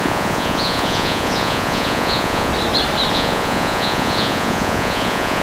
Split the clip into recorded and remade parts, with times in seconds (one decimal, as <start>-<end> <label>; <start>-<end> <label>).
0.0-2.5 remade; 2.5-3.1 recorded; 3.1-5.4 remade